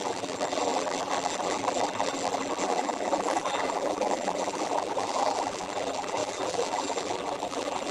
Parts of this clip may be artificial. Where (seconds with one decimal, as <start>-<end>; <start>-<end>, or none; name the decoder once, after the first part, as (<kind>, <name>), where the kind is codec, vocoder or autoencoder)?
0.0-7.9 (vocoder, BigVGAN v2)